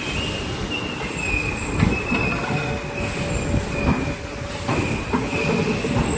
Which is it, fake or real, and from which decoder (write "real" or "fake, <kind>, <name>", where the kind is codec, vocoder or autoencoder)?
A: real